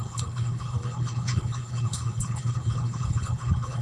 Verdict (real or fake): fake